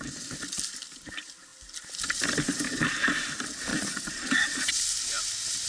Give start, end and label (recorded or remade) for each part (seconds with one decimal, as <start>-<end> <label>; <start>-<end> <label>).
0.0-3.7 recorded; 3.7-4.8 remade; 4.8-5.7 recorded